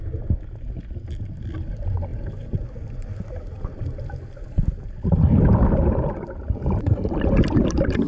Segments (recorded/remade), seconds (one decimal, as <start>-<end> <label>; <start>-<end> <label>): 0.0-8.1 recorded